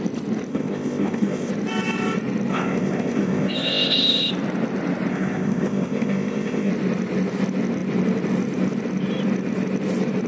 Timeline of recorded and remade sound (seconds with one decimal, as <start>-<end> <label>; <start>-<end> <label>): 0.0-0.5 recorded; 0.5-1.5 remade; 1.5-2.5 recorded; 2.5-4.3 remade; 4.3-5.1 recorded; 5.1-6.7 remade; 6.7-10.3 recorded